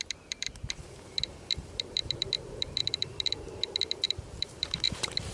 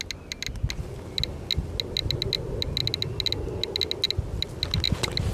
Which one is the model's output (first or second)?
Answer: first